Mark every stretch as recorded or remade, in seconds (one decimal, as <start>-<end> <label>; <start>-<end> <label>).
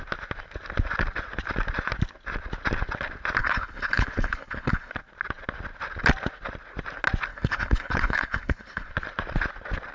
0.0-3.4 recorded; 3.4-4.9 remade; 4.9-7.3 recorded; 7.3-8.9 remade; 8.9-9.9 recorded